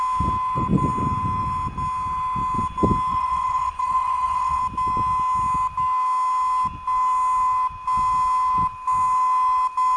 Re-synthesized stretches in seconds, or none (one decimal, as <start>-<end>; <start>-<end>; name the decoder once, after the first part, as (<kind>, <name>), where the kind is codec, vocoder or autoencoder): 3.1-4.6 (vocoder, Vocos)